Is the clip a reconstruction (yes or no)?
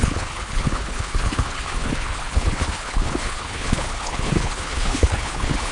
yes